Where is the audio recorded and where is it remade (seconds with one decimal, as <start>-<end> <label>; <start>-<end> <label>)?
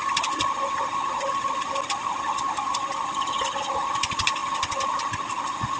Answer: 0.0-5.8 recorded